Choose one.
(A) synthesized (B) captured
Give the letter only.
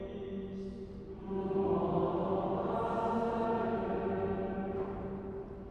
B